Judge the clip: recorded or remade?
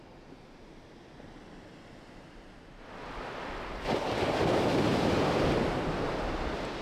recorded